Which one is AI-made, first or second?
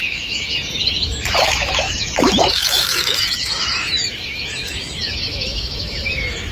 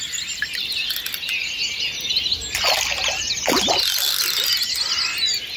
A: first